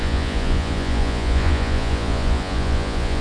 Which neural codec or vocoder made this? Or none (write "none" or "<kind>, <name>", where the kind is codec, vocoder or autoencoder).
vocoder, Vocos